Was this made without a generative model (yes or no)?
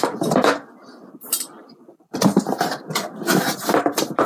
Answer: no